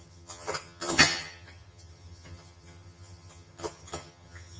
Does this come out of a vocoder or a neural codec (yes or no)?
yes